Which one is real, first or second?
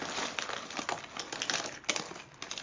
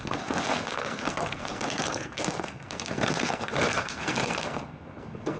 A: first